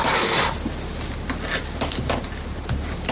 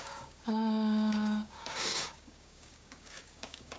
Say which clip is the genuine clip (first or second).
first